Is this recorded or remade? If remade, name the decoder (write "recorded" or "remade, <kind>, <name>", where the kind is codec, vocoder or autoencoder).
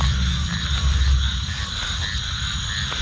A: recorded